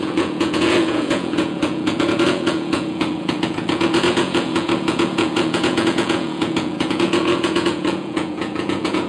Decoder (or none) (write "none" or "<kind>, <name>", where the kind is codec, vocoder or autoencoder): vocoder, Vocos